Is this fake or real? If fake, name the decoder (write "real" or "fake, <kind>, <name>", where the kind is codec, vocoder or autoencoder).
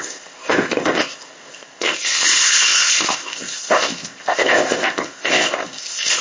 fake, codec, ZipCodec